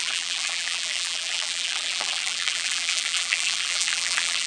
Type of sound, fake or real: fake